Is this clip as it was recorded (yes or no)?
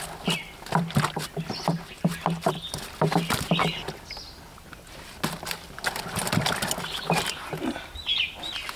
yes